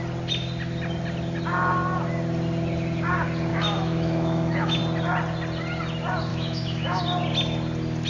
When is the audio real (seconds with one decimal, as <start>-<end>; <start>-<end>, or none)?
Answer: 0.0-3.5; 4.8-6.3; 7.0-8.1